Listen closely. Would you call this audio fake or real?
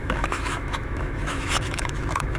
fake